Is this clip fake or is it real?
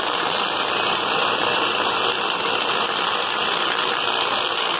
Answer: real